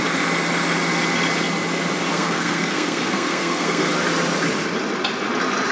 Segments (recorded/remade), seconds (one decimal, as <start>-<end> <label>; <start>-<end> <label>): 0.0-2.1 recorded; 2.1-3.9 remade; 3.9-5.7 recorded

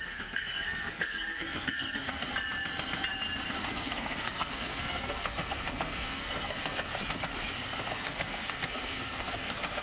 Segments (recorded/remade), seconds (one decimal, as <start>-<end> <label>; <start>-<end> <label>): 0.0-2.3 remade; 2.3-3.7 recorded; 3.7-6.9 remade; 6.9-7.9 recorded; 7.9-9.8 remade

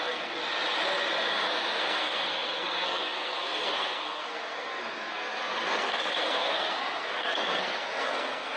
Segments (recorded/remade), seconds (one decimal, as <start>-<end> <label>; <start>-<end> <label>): 0.0-0.4 remade; 0.4-1.3 recorded; 1.3-8.6 remade